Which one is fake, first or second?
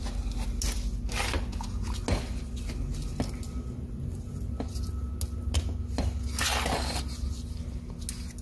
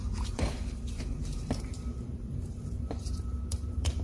second